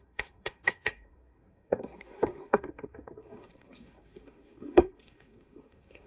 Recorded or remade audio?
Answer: remade